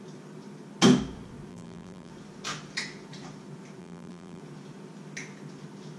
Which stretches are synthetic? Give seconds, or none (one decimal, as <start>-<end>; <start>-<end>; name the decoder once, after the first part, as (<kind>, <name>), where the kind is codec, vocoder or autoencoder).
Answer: 1.5-2.1 (vocoder, BigVGAN v2); 3.8-4.4